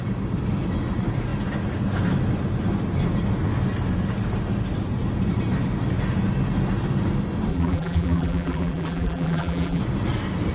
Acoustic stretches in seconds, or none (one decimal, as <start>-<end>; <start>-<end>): 0.0-7.5; 9.8-10.5